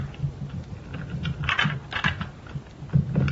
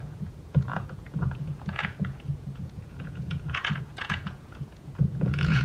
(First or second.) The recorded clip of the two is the first